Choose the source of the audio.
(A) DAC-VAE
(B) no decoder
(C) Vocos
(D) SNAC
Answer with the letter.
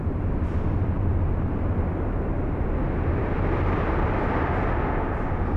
B